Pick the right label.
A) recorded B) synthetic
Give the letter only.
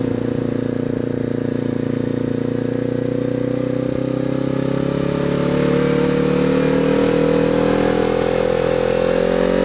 A